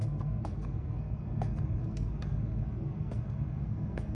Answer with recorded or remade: remade